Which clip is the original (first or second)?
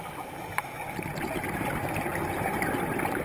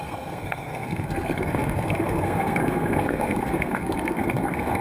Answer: first